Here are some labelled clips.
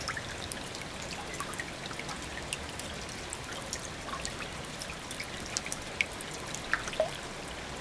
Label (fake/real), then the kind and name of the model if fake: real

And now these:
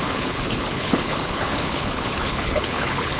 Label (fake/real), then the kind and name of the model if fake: fake, codec, HILCodec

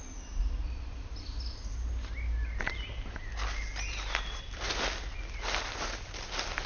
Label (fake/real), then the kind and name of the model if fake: real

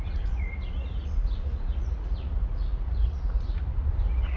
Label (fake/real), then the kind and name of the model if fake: fake, vocoder, Vocos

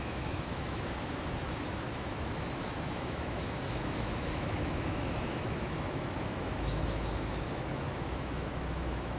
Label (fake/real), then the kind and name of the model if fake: fake, autoencoder, DAC-VAE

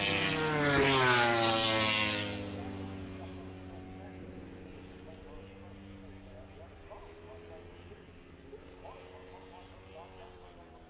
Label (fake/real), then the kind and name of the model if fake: real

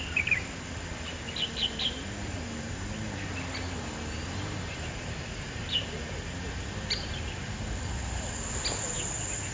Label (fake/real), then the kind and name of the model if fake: real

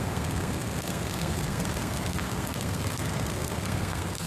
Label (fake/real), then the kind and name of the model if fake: fake, codec, SNAC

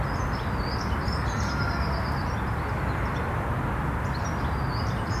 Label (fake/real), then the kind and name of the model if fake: real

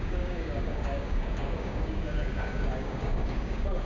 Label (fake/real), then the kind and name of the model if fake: fake, codec, DAC